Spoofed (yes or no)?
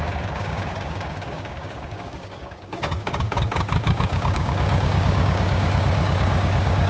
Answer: yes